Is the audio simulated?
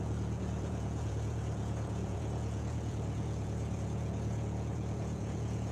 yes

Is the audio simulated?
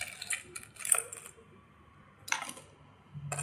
no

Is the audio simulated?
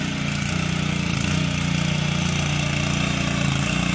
no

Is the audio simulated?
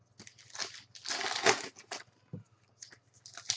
no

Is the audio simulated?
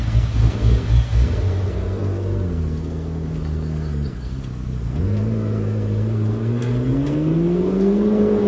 yes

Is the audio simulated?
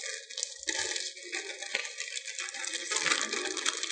no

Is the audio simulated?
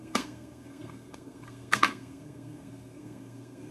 yes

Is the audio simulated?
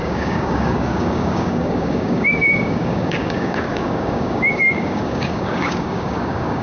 yes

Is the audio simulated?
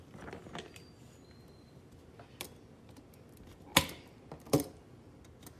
no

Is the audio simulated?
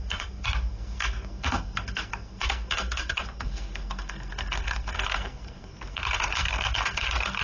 yes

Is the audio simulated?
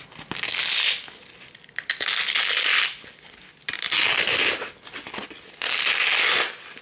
no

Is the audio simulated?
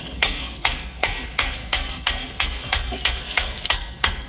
yes